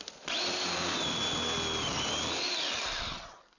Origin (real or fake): real